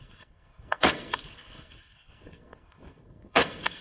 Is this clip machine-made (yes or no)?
yes